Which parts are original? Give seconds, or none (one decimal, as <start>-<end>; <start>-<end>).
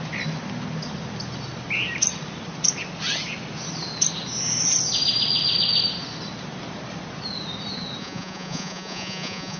0.0-8.0